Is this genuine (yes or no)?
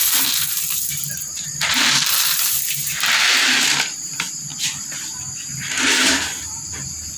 no